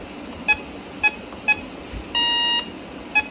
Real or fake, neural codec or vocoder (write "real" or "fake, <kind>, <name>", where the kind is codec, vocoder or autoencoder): real